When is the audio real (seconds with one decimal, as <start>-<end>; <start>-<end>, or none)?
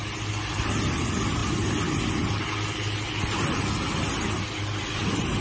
0.0-0.5; 1.4-4.6